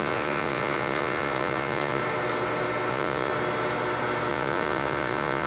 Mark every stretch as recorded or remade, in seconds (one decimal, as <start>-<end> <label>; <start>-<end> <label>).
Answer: 0.0-2.0 remade; 2.0-2.9 recorded; 2.9-3.3 remade; 3.3-4.3 recorded; 4.3-5.5 remade